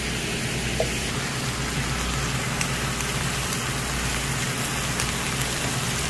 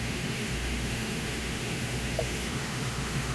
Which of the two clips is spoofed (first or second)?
second